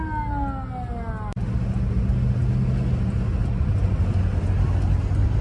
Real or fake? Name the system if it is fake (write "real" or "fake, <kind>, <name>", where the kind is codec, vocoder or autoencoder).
real